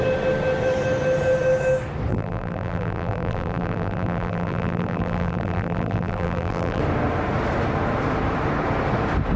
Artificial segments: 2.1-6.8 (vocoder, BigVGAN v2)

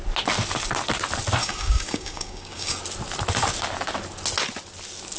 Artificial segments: 1.4-2.8 (codec, DAC)

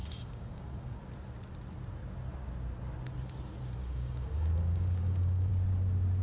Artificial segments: 0.0-1.0 (codec, DAC); 3.8-5.5

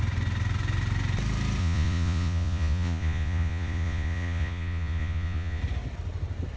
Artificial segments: 1.6-5.6 (vocoder, Vocos)

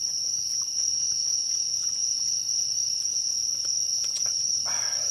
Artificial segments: none

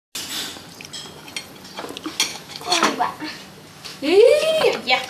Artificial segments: 2.3-3.2 (autoencoder, DAC-VAE); 3.9-4.5

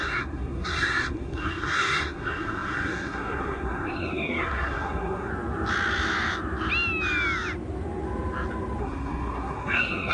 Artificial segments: 0.0-5.3 (codec, SNAC); 8.8-10.1

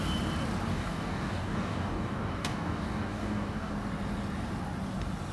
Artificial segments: 0.7-3.7 (codec, DAC)